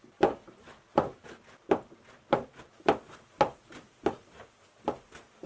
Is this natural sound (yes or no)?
yes